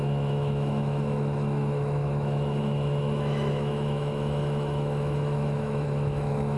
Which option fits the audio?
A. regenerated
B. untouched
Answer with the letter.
A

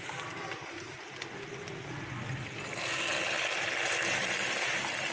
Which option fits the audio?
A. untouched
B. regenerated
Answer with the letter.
A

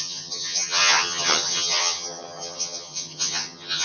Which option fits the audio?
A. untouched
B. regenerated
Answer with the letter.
B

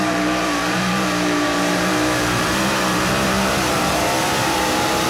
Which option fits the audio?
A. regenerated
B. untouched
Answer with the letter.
A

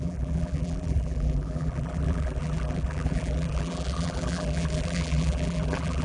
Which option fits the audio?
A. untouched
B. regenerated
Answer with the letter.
B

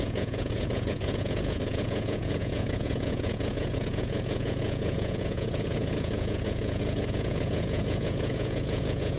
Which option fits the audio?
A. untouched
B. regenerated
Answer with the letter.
B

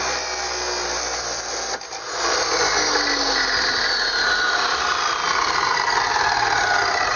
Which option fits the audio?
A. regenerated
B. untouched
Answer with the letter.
B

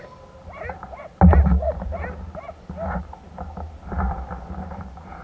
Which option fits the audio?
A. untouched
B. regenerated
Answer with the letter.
A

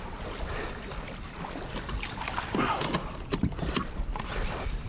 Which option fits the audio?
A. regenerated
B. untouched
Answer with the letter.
B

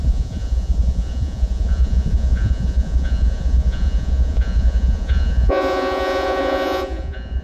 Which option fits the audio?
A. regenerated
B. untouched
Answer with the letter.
A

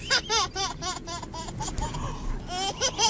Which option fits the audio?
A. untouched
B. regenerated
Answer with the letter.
A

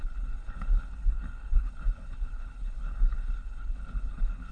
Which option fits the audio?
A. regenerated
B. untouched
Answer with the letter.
A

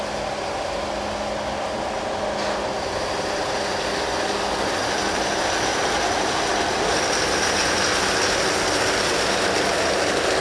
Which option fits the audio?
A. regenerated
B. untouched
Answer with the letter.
B